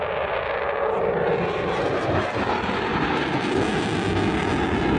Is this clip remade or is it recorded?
recorded